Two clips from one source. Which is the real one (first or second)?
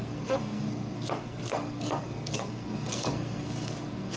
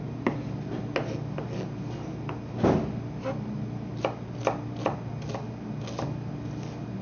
second